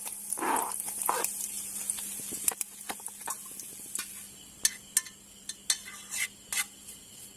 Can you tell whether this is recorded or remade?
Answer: recorded